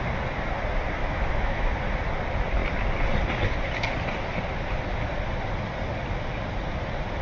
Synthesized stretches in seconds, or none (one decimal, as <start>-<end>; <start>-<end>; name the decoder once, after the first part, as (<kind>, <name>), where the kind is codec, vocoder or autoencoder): 1.0-1.7 (autoencoder, DAC-VAE)